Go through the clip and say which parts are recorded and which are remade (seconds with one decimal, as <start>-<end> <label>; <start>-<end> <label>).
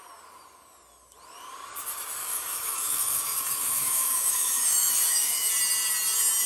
0.0-2.2 recorded; 2.2-5.5 remade; 5.5-6.5 recorded